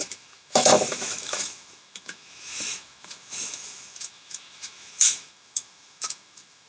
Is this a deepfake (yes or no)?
yes